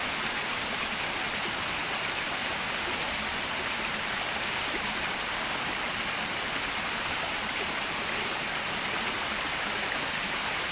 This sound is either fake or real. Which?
fake